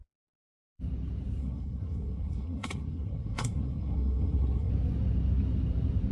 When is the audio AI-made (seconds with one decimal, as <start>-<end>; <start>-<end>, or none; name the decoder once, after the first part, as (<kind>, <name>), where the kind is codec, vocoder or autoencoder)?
1.4-4.7 (codec, SNAC)